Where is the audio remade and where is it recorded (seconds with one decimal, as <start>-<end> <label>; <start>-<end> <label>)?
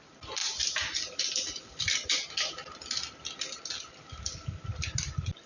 0.0-5.5 recorded